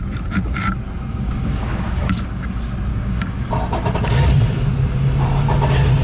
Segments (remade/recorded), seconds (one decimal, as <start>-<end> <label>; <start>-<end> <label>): 0.0-1.1 recorded; 1.1-2.5 remade; 2.5-2.9 recorded; 2.9-3.5 remade; 3.5-6.0 recorded